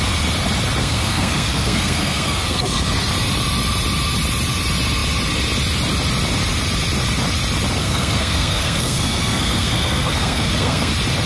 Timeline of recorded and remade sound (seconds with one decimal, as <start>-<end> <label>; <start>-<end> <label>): 0.0-0.8 recorded; 0.8-2.9 remade; 2.9-7.8 recorded; 7.8-10.9 remade; 10.9-11.3 recorded